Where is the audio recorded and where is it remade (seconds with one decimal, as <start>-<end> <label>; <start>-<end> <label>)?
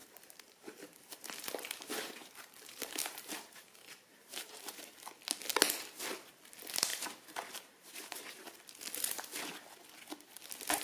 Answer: 0.0-4.8 remade; 4.8-6.9 recorded; 6.9-8.5 remade; 8.5-10.8 recorded